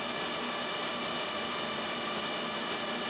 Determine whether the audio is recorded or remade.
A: recorded